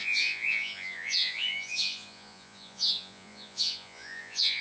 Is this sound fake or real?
fake